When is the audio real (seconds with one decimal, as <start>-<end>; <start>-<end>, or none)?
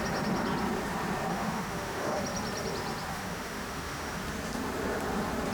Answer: 0.0-1.3; 2.2-3.1; 4.2-5.5